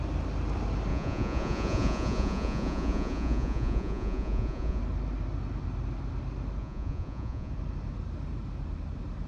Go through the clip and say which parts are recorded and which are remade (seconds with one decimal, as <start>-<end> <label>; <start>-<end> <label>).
0.0-0.9 recorded; 0.9-4.8 remade; 4.8-6.6 recorded; 6.6-7.5 remade; 7.5-9.3 recorded